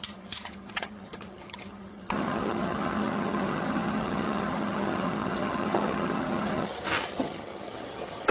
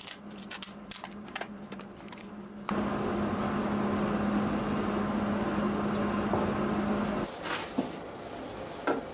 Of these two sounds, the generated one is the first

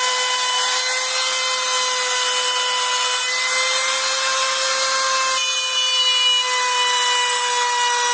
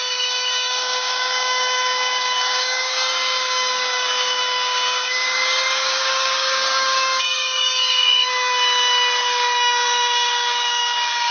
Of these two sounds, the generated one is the second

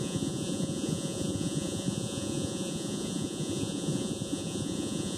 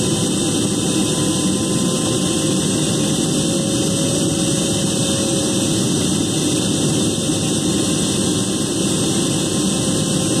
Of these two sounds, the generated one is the first